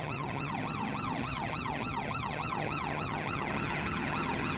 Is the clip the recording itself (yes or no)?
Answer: no